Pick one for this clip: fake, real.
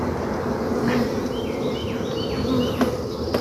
real